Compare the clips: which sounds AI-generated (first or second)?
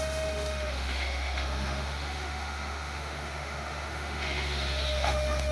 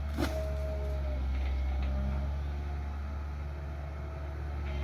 first